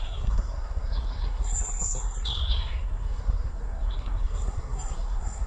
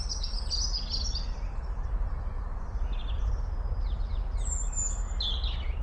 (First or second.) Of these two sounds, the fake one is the first